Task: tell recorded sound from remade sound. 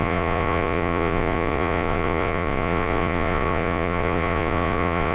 remade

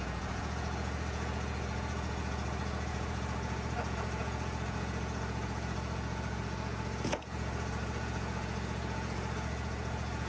remade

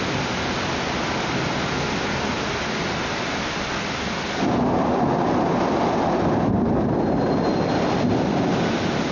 recorded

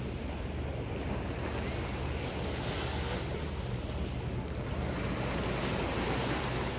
recorded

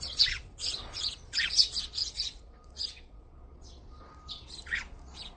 remade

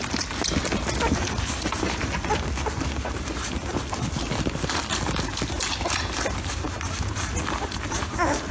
recorded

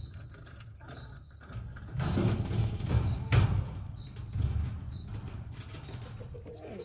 recorded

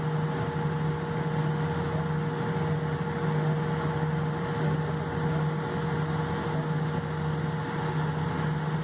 recorded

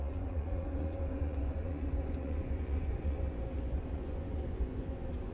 remade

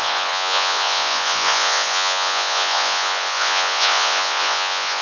remade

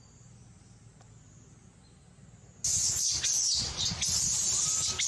recorded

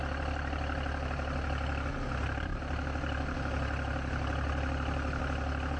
recorded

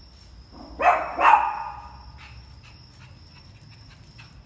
recorded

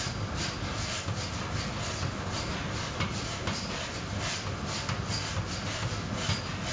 recorded